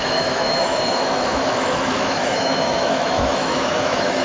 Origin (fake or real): fake